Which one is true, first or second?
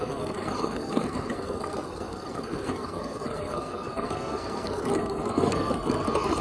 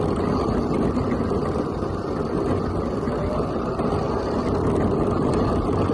second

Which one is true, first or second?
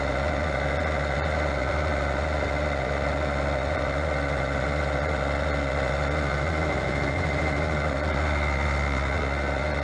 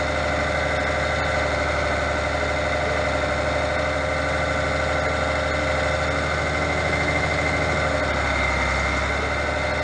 second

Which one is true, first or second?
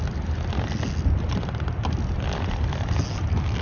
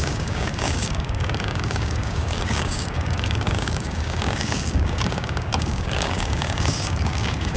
first